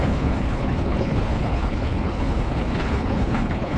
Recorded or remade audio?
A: remade